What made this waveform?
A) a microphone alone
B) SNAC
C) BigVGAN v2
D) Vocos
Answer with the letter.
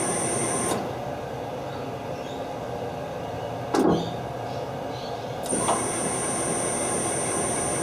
A